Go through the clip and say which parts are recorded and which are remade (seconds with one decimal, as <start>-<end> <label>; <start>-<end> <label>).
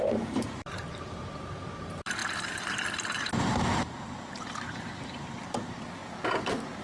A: 0.0-2.2 remade; 2.2-3.1 recorded; 3.1-6.0 remade; 6.0-6.8 recorded